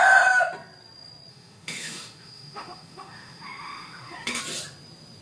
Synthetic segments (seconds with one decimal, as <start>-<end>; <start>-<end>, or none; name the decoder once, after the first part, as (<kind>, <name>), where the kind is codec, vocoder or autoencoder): 1.3-4.4 (autoencoder, DAC-VAE)